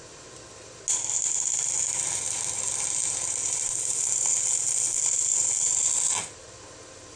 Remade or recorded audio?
recorded